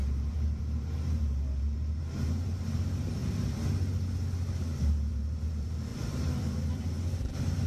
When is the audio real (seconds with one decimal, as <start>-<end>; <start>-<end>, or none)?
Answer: 3.2-4.8